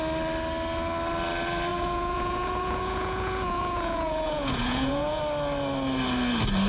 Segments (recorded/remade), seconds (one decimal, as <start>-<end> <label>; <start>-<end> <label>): 0.0-1.7 recorded; 1.7-5.2 remade; 5.2-6.7 recorded